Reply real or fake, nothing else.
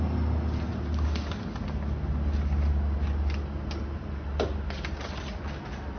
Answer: real